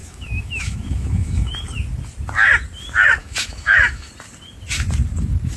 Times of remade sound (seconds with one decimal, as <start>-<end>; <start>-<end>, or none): 0.0-1.5; 3.2-4.1